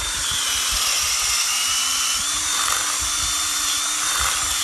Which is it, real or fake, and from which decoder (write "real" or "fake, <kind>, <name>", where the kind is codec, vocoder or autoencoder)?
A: fake, vocoder, BigVGAN v2